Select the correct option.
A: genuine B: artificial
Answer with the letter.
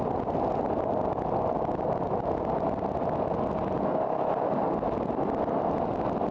A